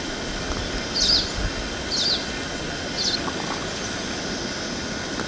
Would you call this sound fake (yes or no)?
no